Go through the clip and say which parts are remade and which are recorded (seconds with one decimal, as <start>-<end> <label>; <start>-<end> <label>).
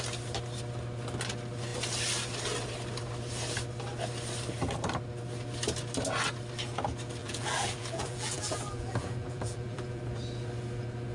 0.0-7.2 recorded; 7.2-10.0 remade; 10.0-11.1 recorded